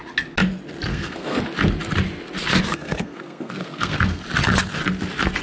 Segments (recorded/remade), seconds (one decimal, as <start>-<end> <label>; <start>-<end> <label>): 0.0-0.9 recorded; 0.9-1.4 remade; 1.4-2.7 recorded; 2.7-4.2 remade; 4.2-5.4 recorded